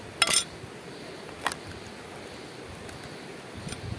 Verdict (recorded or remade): recorded